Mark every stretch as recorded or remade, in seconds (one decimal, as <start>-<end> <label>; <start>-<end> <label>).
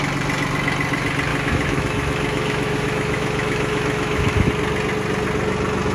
0.0-1.3 recorded; 1.3-4.5 remade; 4.5-5.9 recorded